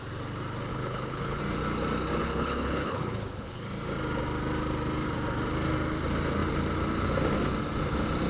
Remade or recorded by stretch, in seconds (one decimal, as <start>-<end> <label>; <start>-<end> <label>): 0.0-0.7 recorded; 0.7-1.4 remade; 1.4-2.2 recorded; 2.2-3.6 remade; 3.6-8.3 recorded